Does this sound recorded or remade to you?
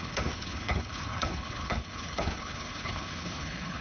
remade